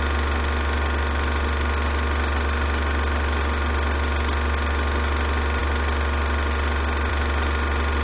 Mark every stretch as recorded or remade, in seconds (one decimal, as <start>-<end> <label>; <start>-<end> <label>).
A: 0.0-8.0 recorded